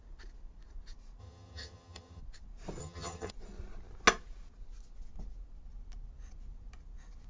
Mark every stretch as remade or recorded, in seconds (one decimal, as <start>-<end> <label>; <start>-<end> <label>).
0.0-1.2 recorded; 1.2-2.2 remade; 2.2-2.8 recorded; 2.8-3.3 remade; 3.3-7.3 recorded